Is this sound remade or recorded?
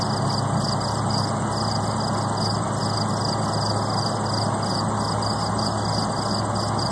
recorded